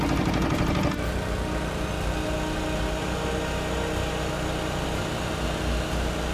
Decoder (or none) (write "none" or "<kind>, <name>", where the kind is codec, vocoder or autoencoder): none